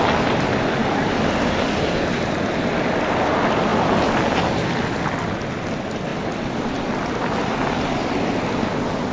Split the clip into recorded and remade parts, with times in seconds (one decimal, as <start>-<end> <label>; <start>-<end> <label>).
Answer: 0.0-0.8 recorded; 0.8-2.4 remade; 2.4-3.7 recorded; 3.7-4.5 remade; 4.5-6.1 recorded; 6.1-8.1 remade; 8.1-9.1 recorded